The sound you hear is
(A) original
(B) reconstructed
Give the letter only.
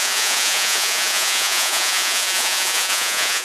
B